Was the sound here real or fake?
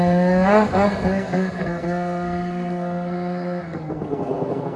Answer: fake